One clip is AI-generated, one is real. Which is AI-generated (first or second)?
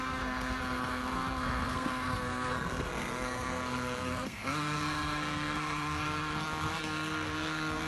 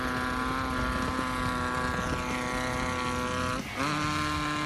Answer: first